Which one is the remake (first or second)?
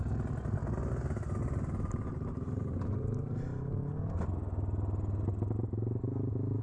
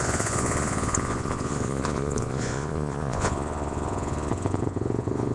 second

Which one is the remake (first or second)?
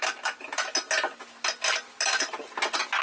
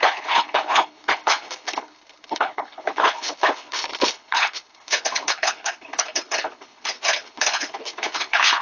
second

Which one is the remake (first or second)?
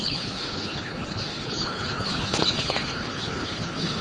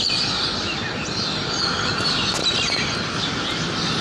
first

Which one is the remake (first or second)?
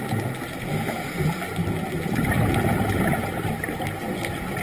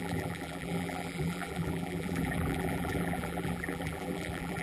second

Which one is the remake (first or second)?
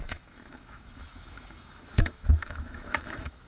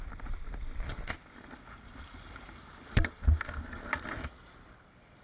first